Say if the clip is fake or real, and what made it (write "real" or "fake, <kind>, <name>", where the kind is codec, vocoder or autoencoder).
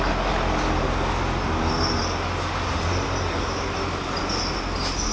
real